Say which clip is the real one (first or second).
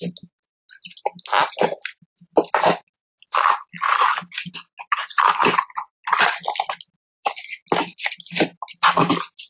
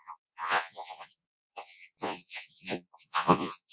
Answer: first